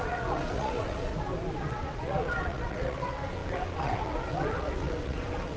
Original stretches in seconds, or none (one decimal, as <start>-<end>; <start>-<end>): 1.1-1.6